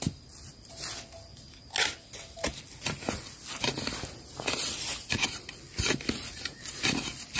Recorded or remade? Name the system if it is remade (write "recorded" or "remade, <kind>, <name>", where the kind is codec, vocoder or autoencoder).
recorded